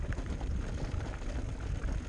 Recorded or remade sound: recorded